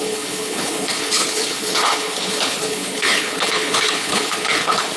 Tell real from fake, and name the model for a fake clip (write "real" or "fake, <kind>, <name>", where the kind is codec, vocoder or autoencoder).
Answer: fake, codec, HILCodec